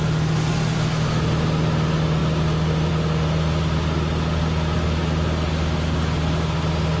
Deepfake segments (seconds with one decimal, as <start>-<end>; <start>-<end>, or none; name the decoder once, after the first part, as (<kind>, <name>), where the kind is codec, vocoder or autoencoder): none